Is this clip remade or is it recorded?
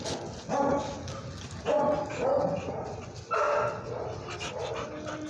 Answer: recorded